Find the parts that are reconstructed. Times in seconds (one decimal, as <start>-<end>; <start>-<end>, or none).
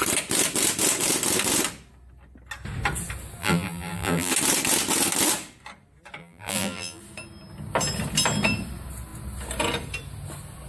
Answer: 3.4-4.3; 6.2-7.0